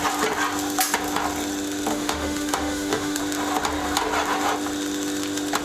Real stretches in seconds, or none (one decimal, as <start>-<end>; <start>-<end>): 0.0-1.9; 3.2-5.6